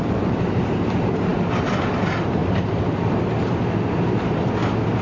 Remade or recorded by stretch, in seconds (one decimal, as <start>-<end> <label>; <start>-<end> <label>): 0.0-2.4 recorded; 2.4-3.2 remade; 3.2-5.0 recorded